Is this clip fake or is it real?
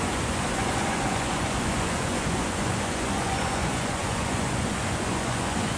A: fake